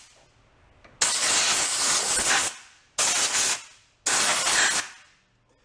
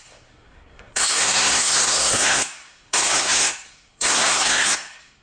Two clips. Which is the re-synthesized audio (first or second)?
second